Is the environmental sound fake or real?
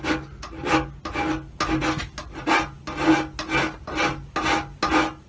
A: real